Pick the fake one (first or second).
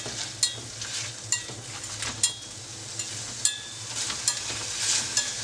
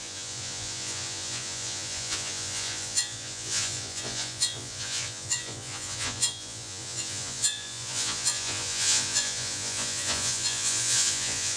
second